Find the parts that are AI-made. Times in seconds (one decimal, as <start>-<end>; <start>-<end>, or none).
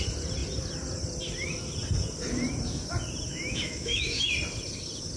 3.3-4.3